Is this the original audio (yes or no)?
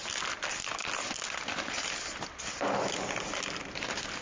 yes